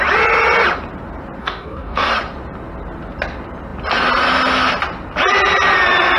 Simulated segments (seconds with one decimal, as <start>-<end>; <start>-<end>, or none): 1.4-2.1

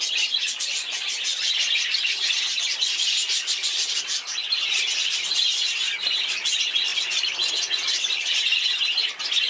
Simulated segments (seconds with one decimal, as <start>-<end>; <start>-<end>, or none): none

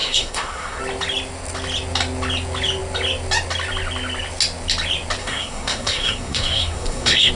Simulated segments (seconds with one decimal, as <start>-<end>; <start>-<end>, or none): 0.0-0.8; 5.2-7.3

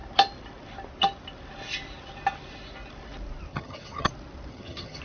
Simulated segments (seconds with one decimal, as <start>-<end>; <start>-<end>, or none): 3.5-4.1; 4.5-5.0

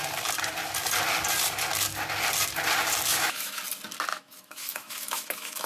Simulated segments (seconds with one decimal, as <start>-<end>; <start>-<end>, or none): 3.1-3.6; 4.1-5.7

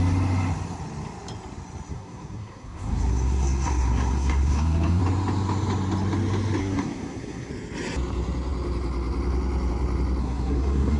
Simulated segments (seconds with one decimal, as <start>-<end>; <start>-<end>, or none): 1.9-5.0; 6.6-7.5; 10.2-11.0

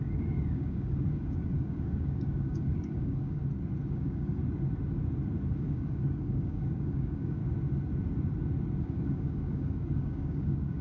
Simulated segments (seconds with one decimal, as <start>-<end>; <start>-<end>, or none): 0.0-3.4; 3.9-4.4; 5.5-7.4; 8.8-10.8

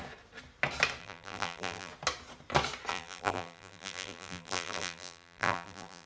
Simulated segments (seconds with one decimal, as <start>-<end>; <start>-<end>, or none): 1.0-1.9; 2.9-6.1